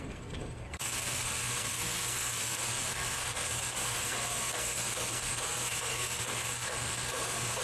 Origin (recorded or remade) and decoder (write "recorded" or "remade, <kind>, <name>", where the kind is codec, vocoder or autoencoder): remade, codec, SNAC